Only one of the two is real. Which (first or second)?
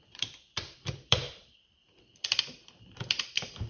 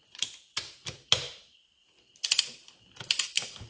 second